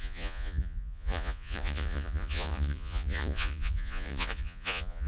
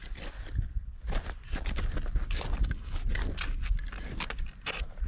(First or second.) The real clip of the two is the second